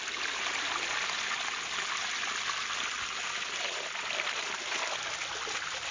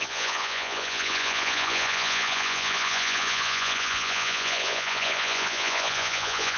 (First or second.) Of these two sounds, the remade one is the second